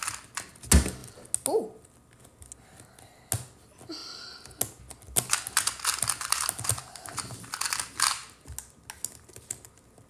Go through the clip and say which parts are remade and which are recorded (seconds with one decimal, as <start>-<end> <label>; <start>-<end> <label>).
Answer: 0.0-10.1 recorded